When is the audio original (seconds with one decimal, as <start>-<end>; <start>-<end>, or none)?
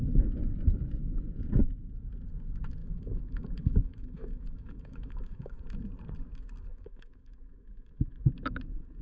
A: 0.0-2.8; 5.6-6.7; 8.3-9.0